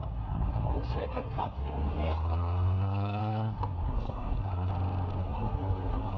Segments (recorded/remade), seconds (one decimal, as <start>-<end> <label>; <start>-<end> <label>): 0.0-4.7 remade; 4.7-5.2 recorded; 5.2-6.2 remade